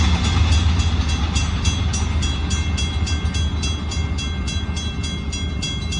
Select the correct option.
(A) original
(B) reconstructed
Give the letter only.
A